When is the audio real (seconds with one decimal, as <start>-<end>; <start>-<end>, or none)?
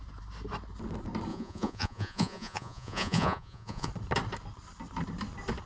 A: 0.0-1.3; 3.9-5.7